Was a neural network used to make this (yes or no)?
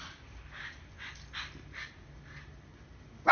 no